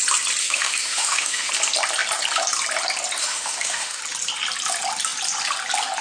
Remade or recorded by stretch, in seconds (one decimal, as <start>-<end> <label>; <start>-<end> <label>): 0.0-0.4 recorded; 0.4-1.5 remade; 1.5-3.2 recorded; 3.2-4.0 remade; 4.0-6.0 recorded